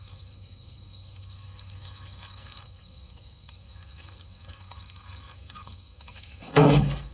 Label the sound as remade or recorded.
remade